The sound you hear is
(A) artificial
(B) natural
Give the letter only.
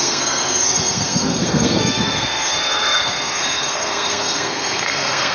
A